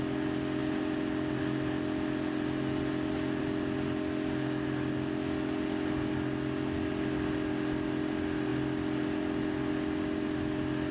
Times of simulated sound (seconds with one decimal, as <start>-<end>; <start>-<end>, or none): none